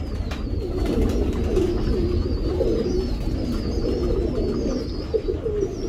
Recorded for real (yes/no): yes